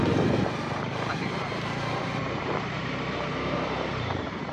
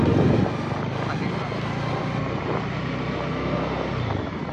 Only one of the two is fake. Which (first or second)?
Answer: first